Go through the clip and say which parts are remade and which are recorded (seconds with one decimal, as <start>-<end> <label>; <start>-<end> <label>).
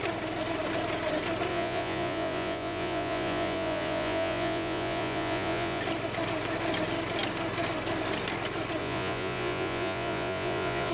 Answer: 0.0-1.5 recorded; 1.5-5.8 remade; 5.8-8.8 recorded; 8.8-10.9 remade